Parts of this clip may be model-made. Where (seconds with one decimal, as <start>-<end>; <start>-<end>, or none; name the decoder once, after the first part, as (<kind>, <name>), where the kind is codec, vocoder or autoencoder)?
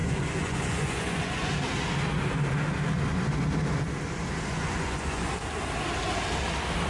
0.0-1.5 (vocoder, Vocos); 4.5-5.2